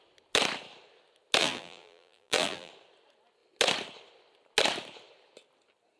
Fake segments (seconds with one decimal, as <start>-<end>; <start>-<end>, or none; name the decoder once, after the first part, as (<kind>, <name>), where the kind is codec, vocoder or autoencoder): 1.4-2.7 (vocoder, BigVGAN v2)